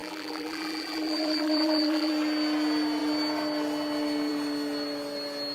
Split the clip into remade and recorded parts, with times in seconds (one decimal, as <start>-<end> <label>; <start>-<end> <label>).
0.0-2.1 remade; 2.1-5.5 recorded